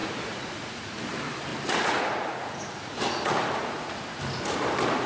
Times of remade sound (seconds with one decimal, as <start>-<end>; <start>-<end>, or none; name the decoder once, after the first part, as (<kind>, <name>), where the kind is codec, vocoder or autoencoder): 0.0-1.0 (vocoder, Vocos); 1.5-4.2